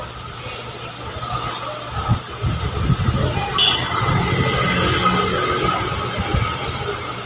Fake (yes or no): no